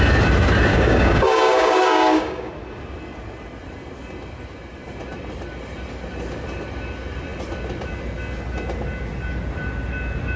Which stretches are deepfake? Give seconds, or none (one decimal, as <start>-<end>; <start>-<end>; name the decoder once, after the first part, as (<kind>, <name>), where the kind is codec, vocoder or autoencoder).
0.7-2.5 (codec, DAC)

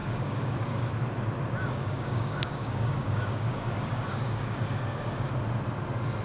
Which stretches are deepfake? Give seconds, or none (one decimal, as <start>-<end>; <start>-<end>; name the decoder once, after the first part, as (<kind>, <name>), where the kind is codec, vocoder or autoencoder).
0.0-0.9 (codec, DAC); 1.6-5.3

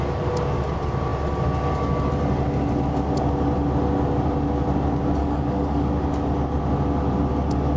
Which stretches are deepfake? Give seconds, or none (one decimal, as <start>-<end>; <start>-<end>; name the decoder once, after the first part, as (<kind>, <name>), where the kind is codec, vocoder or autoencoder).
5.2-5.9 (codec, DAC)

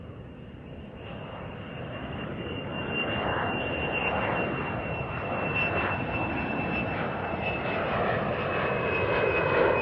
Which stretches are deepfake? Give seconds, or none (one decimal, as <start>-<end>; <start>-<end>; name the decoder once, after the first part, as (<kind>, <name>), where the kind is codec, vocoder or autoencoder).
2.0-3.6 (codec, DAC)

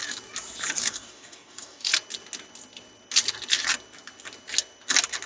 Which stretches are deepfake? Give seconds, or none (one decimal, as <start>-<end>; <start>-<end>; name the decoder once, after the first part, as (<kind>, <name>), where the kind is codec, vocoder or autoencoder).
0.8-1.9 (codec, DAC)

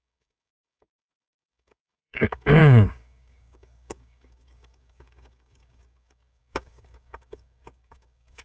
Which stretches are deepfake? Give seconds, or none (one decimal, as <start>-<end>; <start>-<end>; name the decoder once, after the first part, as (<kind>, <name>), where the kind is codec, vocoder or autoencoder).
0.0-8.4 (codec, DAC)